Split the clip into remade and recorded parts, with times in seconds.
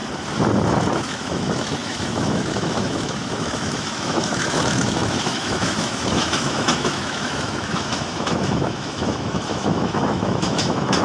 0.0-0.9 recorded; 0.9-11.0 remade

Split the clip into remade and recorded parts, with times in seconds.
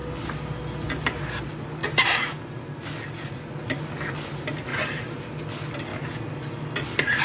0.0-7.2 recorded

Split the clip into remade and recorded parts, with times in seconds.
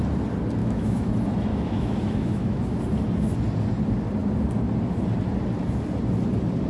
0.0-0.6 recorded; 0.6-1.1 remade; 1.1-1.5 recorded; 1.5-2.8 remade; 2.8-6.7 recorded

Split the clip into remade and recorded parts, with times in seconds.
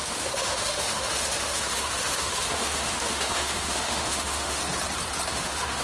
0.0-4.6 remade; 4.6-5.3 recorded; 5.3-5.8 remade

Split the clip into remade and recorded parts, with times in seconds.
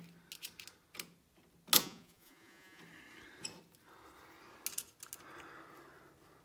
0.0-1.8 recorded; 1.8-2.8 remade; 2.8-6.4 recorded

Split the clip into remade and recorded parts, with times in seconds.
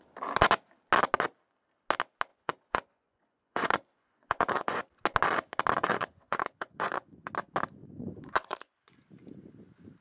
0.0-2.3 recorded; 2.3-4.8 remade; 4.8-5.8 recorded; 5.8-7.3 remade; 7.3-7.8 recorded; 7.8-9.0 remade; 9.0-10.0 recorded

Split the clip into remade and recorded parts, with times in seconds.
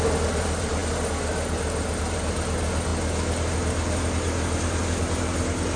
0.0-0.8 remade; 0.8-2.0 recorded; 2.0-2.9 remade; 2.9-5.8 recorded